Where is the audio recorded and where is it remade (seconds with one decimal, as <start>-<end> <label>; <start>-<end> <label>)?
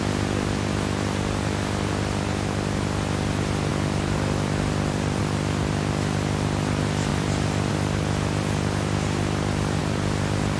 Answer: 0.0-3.7 recorded; 3.7-5.2 remade; 5.2-7.1 recorded; 7.1-7.7 remade; 7.7-9.8 recorded; 9.8-10.6 remade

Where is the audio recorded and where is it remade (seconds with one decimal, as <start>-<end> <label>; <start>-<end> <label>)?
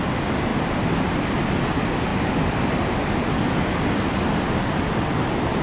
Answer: 0.0-0.5 recorded; 0.5-1.1 remade; 1.1-5.6 recorded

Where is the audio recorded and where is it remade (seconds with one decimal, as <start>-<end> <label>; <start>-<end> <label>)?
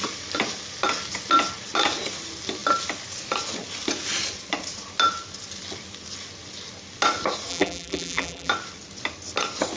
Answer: 0.0-7.5 recorded; 7.5-8.5 remade; 8.5-9.8 recorded